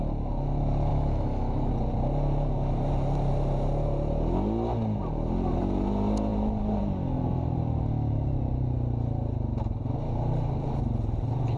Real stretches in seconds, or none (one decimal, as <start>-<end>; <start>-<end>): 0.0-0.9; 1.7-11.6